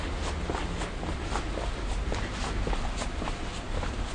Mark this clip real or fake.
real